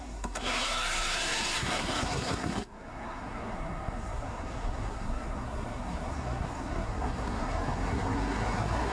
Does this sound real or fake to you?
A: fake